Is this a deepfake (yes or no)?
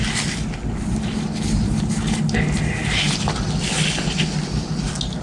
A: no